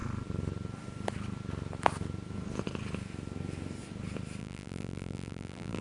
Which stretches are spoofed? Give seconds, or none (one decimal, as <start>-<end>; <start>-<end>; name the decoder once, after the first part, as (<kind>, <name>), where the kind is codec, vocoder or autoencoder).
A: 4.4-5.8 (vocoder, BigVGAN v2)

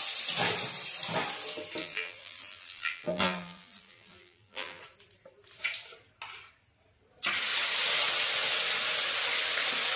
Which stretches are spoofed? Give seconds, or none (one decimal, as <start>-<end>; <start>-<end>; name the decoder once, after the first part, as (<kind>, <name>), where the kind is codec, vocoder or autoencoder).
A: 1.8-4.8 (vocoder, BigVGAN v2)

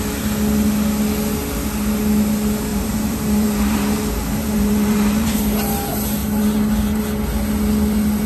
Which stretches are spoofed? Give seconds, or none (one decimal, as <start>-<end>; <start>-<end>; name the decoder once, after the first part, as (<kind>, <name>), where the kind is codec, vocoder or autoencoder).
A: 2.7-5.4 (vocoder, BigVGAN v2); 6.2-7.0

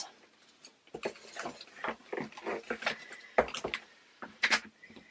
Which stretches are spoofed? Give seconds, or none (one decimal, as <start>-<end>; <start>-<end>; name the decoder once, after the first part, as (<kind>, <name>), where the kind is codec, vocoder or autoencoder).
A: none